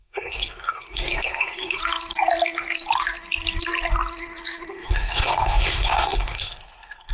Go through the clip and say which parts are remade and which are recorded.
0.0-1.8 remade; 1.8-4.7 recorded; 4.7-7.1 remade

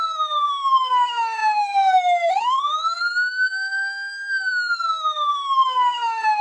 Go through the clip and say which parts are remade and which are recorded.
0.0-6.4 remade

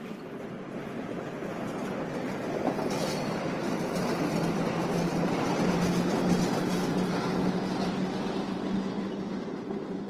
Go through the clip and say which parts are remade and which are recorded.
0.0-10.1 recorded

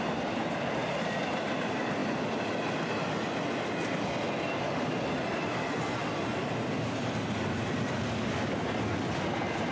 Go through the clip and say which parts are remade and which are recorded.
0.0-9.7 recorded

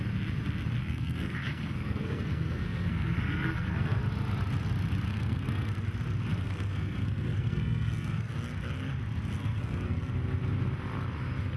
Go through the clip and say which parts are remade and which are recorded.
0.0-0.8 recorded; 0.8-4.0 remade; 4.0-5.1 recorded; 5.1-5.8 remade; 5.8-6.3 recorded; 6.3-8.3 remade; 8.3-9.4 recorded; 9.4-10.1 remade; 10.1-11.6 recorded

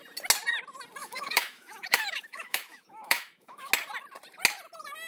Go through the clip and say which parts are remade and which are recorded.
0.0-1.0 recorded; 1.0-3.7 remade; 3.7-5.1 recorded

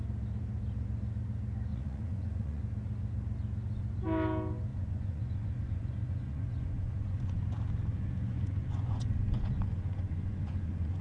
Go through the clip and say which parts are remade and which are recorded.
0.0-1.7 recorded; 1.7-2.6 remade; 2.6-4.7 recorded; 4.7-7.4 remade; 7.4-7.9 recorded; 7.9-11.0 remade